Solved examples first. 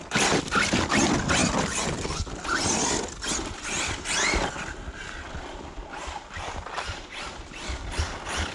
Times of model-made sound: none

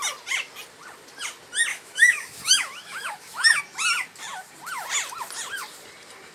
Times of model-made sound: 1.7-3.6

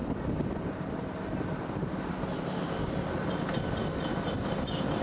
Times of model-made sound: none

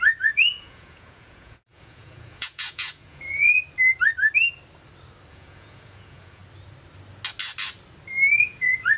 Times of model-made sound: 0.0-3.6; 5.3-6.4; 8.4-9.0

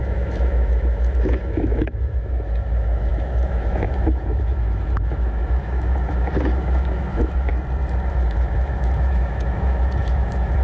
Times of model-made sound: 0.0-7.5; 8.1-10.6

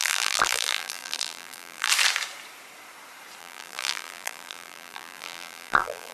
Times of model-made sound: 0.0-1.9; 3.4-6.1

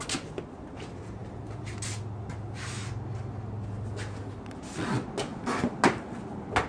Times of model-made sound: none